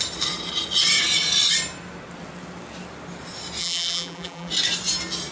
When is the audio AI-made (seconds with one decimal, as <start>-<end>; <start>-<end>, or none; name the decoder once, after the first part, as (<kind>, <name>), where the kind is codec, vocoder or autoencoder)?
3.6-4.5 (vocoder, BigVGAN v2)